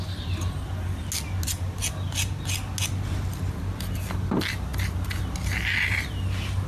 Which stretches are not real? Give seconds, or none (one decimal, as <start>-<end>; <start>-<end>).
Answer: none